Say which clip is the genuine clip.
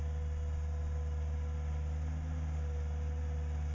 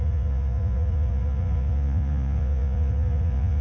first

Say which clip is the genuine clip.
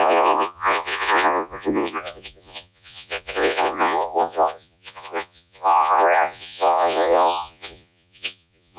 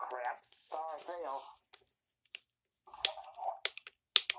second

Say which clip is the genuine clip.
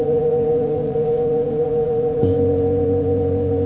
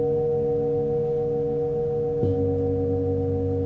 second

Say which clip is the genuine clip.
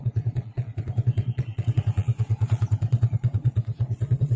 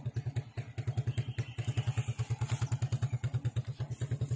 second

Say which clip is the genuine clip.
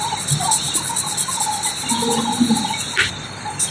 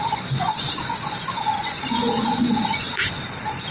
first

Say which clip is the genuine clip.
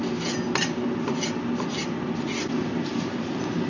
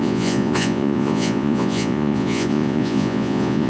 first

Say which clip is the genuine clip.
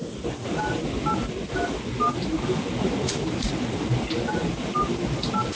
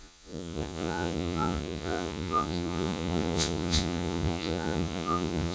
first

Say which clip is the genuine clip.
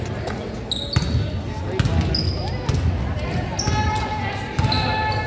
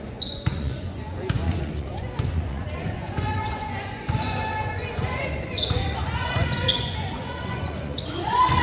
first